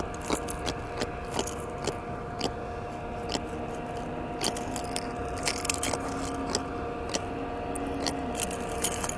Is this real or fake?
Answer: real